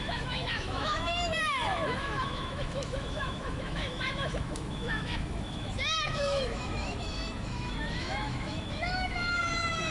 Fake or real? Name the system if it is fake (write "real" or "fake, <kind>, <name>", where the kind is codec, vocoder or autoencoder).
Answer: fake, autoencoder, DAC-VAE